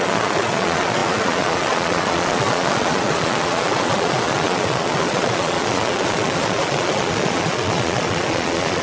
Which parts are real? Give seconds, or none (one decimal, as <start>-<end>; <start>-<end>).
none